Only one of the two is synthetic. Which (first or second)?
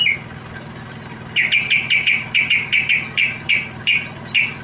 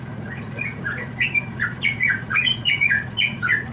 second